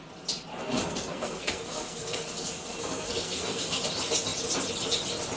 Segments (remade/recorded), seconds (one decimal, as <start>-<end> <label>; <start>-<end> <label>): 0.0-0.6 recorded; 0.6-3.8 remade; 3.8-5.4 recorded